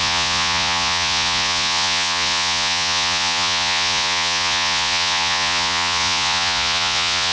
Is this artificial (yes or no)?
yes